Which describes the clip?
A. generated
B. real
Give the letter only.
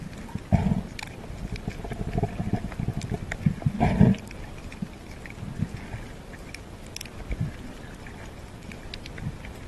B